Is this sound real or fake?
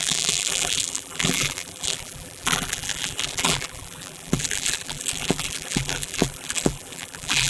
fake